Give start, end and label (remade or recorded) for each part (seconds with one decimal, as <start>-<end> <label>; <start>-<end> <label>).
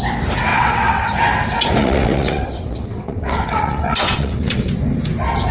0.0-0.5 recorded; 0.5-1.1 remade; 1.1-1.8 recorded; 1.8-4.7 remade; 4.7-5.5 recorded